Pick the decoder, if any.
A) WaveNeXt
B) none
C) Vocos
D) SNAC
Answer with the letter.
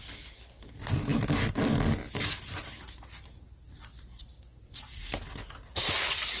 B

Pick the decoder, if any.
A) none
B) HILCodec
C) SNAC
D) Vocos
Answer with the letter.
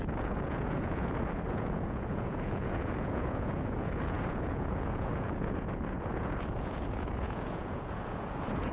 D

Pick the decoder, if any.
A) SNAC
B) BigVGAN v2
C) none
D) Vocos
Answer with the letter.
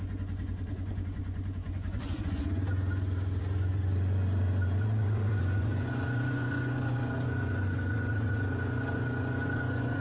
D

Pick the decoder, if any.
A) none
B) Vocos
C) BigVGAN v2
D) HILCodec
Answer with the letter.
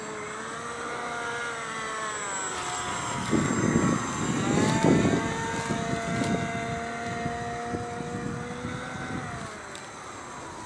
A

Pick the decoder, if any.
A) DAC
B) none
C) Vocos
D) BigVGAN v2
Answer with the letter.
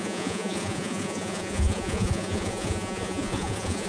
C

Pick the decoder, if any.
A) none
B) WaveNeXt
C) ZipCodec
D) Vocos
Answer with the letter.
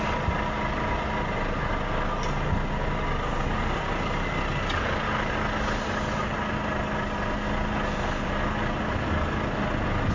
A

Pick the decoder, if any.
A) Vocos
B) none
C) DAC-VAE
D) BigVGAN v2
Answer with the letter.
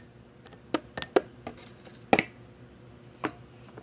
B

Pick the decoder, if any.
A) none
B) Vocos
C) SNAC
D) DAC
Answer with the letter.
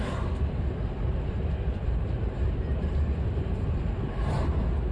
A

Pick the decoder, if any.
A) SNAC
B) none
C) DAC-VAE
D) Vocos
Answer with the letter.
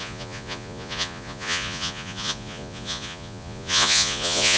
D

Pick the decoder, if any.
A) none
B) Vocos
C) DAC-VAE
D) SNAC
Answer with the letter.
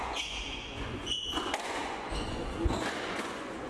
B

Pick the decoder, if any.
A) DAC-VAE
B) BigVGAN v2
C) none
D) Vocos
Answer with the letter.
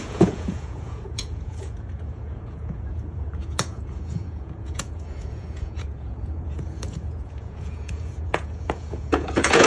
D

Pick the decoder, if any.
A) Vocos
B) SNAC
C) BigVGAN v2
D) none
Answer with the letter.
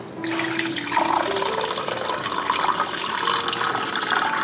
D